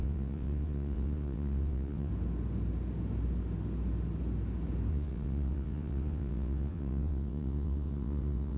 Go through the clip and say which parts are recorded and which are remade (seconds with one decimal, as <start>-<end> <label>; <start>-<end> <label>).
0.0-2.1 remade; 2.1-4.9 recorded; 4.9-8.6 remade